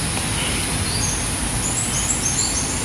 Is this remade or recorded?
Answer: recorded